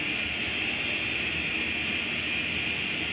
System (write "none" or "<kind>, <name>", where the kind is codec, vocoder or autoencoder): none